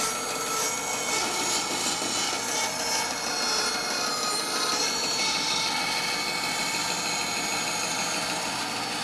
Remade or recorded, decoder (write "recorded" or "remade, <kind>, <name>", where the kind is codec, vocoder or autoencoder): recorded